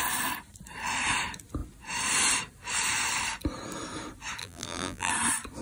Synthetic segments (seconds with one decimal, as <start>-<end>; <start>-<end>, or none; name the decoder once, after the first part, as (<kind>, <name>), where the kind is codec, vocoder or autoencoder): 4.4-5.1 (vocoder, BigVGAN v2)